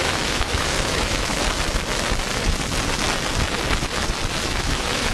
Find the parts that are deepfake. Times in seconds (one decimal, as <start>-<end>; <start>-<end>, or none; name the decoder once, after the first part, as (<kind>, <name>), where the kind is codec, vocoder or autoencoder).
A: 0.0-1.3 (autoencoder, DAC-VAE); 4.4-5.1